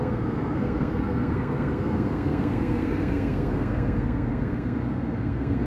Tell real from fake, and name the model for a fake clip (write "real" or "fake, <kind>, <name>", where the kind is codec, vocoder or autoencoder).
fake, codec, SNAC